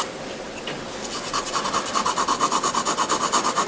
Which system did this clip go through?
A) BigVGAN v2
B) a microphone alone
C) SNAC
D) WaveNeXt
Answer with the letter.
B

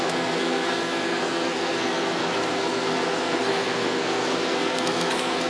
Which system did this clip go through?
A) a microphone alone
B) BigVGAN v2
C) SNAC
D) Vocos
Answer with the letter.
C